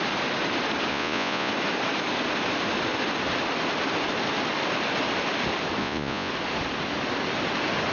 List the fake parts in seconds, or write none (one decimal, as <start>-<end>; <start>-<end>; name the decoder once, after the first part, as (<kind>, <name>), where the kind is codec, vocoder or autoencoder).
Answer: 0.9-1.5 (vocoder, Vocos); 5.8-6.3